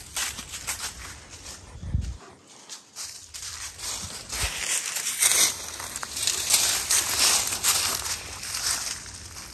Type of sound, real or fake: real